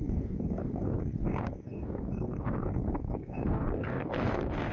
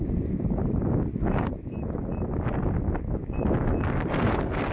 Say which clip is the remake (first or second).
first